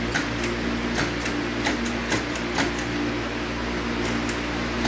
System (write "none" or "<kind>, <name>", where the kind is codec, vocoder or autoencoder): none